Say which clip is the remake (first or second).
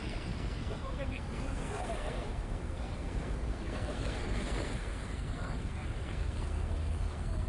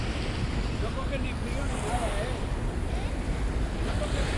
first